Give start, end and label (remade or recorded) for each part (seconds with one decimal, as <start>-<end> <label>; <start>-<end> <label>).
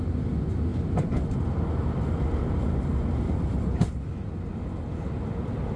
0.0-5.8 recorded